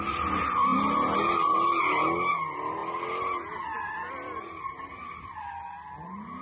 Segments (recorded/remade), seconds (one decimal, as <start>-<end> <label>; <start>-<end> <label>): 0.0-6.4 recorded